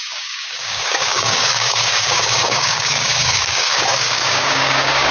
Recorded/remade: remade